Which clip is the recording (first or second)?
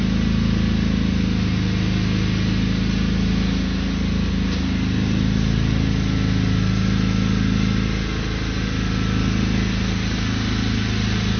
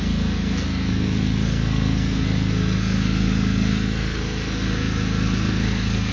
first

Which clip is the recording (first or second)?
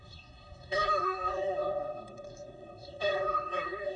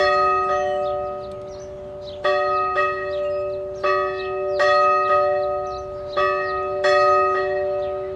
second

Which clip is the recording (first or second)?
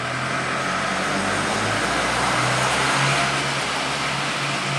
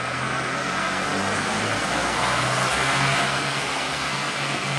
first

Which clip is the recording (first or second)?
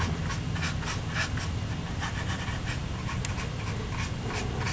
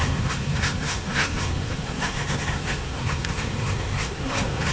first